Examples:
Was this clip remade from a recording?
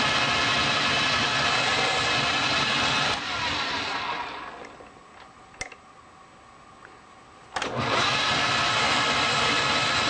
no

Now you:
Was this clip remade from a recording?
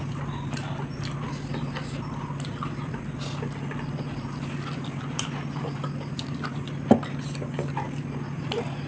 no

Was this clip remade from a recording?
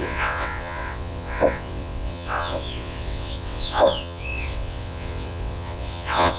yes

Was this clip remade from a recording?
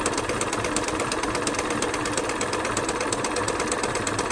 no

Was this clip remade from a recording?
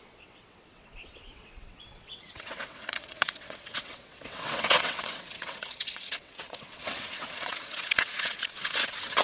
yes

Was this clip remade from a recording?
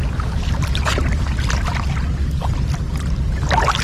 no